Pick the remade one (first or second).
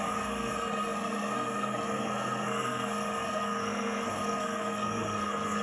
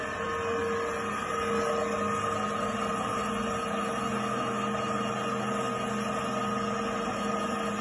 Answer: first